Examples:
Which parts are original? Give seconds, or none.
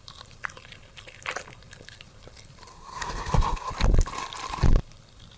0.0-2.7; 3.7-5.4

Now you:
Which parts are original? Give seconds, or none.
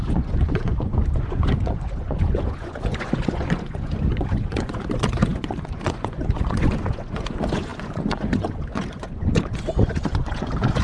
none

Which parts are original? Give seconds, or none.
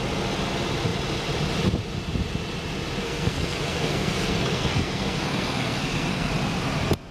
0.0-3.0; 6.3-7.1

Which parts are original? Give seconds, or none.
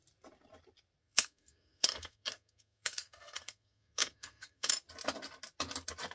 0.0-1.0; 4.7-6.1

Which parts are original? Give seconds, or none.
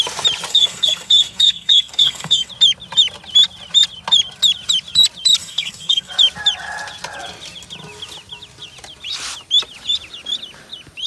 0.0-0.5; 2.5-5.4; 6.1-11.1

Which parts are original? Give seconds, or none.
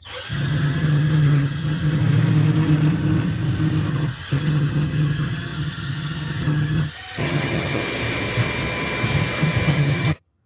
2.0-3.9; 7.8-9.7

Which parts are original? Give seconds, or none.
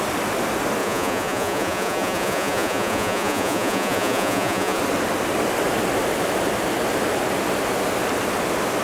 0.0-0.8; 4.8-8.8